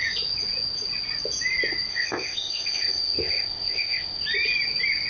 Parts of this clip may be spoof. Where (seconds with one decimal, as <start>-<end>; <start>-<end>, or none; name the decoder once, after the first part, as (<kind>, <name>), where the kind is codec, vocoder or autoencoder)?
1.9-4.2 (codec, ZipCodec)